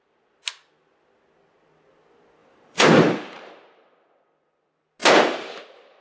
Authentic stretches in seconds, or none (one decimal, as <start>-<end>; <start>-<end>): 0.0-2.4; 3.5-5.0; 5.6-6.0